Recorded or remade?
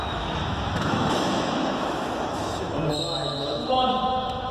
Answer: remade